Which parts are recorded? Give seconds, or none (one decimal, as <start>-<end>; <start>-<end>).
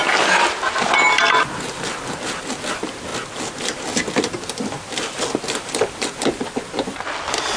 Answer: 0.0-7.6